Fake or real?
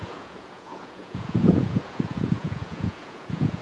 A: fake